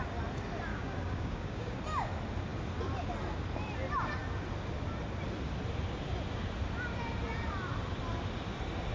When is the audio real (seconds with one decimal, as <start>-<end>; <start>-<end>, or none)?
0.0-0.7; 1.8-8.9